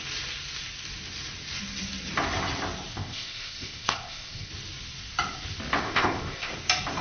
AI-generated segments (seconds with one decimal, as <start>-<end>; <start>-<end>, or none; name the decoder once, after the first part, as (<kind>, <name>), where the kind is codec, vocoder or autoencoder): 2.9-4.5 (codec, ZipCodec); 5.8-6.5